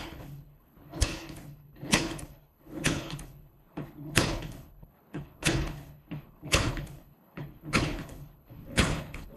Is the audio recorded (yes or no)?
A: no